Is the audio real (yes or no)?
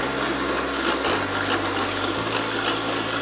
yes